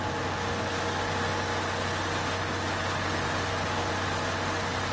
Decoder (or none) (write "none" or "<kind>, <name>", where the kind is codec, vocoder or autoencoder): none